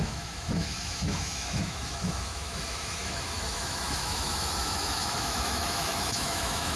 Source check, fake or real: fake